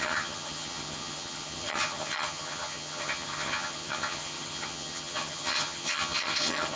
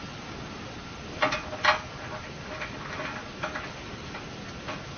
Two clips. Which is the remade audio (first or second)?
first